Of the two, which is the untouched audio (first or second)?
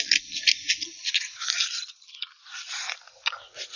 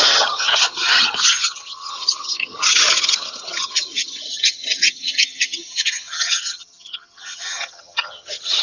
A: first